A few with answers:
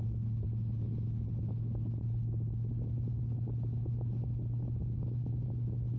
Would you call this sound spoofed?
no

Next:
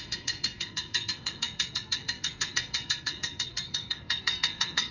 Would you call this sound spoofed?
yes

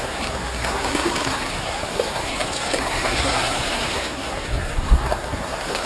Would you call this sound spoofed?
yes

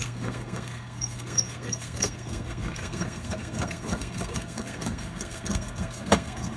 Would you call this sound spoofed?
yes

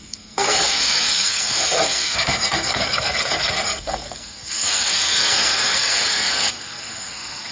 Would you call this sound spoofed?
yes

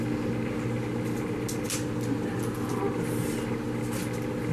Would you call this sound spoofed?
no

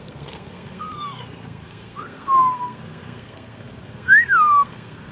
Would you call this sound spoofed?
yes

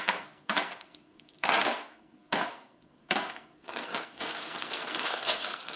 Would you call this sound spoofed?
yes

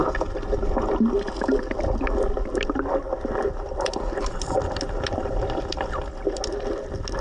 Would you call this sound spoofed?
no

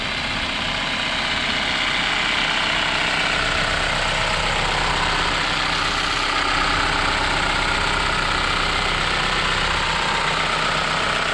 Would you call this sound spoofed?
no